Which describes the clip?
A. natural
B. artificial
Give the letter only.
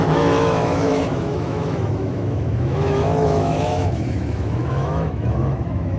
B